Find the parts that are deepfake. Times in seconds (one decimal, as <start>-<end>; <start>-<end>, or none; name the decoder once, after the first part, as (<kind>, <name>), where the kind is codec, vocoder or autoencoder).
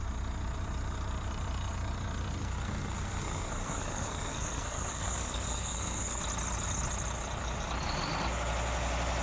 2.4-6.2 (codec, SNAC)